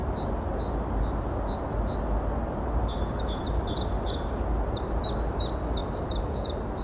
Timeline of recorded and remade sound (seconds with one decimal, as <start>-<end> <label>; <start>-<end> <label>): 0.0-2.4 recorded; 2.4-5.0 remade; 5.0-5.8 recorded; 5.8-6.8 remade